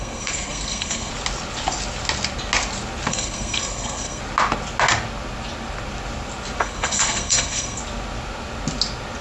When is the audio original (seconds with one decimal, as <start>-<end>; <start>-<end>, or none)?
1.1-3.1; 4.2-6.6; 7.8-9.2